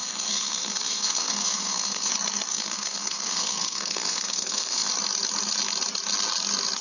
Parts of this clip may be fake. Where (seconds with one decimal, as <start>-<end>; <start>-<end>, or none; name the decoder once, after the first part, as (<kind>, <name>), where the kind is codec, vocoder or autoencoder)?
0.0-2.1 (codec, SNAC); 2.5-4.9